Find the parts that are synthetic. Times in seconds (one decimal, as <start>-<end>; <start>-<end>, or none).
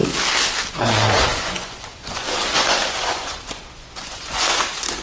0.7-5.0